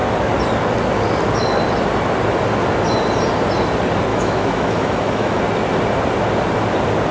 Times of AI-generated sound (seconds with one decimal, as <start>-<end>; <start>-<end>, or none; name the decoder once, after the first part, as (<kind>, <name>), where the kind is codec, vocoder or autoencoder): 4.1-5.4 (autoencoder, DAC-VAE)

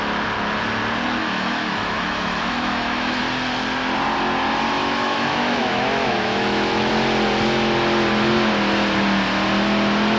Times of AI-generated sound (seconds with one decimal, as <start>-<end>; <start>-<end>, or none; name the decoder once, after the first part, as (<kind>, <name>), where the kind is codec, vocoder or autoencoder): 1.2-3.2 (autoencoder, DAC-VAE); 4.8-6.9

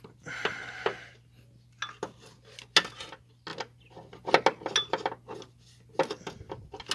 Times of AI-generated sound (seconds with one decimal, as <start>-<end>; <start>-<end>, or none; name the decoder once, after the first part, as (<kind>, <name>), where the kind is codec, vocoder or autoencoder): none

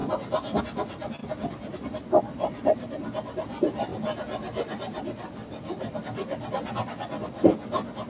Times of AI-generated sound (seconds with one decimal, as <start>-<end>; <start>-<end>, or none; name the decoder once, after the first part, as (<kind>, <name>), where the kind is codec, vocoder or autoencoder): none

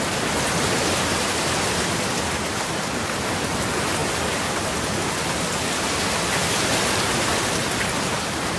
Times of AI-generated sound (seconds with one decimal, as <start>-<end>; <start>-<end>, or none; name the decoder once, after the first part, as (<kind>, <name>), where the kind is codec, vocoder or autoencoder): none

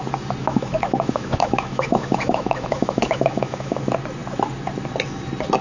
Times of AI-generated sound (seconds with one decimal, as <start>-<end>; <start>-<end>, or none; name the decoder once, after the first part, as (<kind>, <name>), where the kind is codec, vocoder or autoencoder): 0.4-3.8 (autoencoder, DAC-VAE)

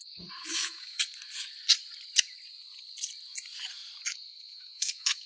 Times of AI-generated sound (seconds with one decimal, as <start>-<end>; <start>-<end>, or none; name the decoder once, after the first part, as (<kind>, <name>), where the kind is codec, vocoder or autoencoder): 0.5-1.0 (autoencoder, DAC-VAE); 4.3-5.3

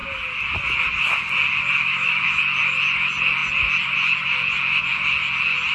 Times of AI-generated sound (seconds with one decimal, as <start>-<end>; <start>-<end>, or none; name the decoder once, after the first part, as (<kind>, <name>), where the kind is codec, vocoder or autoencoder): 1.8-2.4 (autoencoder, DAC-VAE)